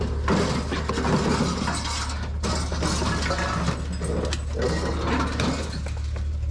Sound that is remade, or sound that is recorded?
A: recorded